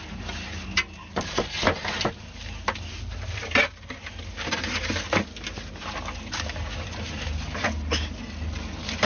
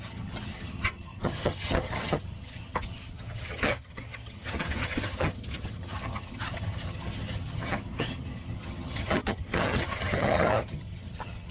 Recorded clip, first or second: first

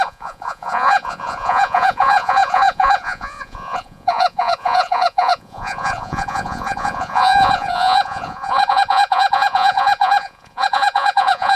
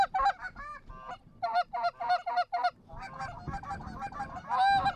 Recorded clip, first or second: second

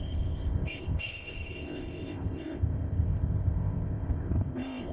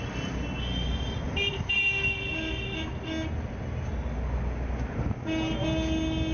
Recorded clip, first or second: second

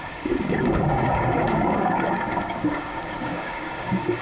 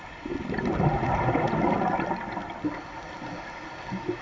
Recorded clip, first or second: second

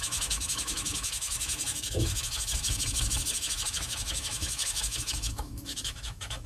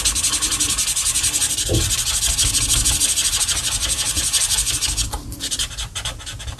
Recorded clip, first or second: second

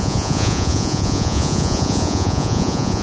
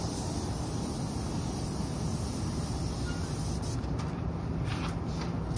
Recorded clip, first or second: second